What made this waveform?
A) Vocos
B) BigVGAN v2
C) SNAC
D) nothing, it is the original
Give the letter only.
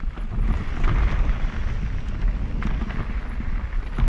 B